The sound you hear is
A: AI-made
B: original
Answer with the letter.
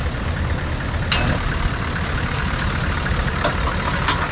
B